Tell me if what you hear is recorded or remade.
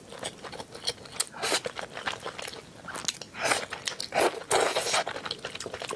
recorded